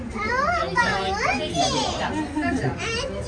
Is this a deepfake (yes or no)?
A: no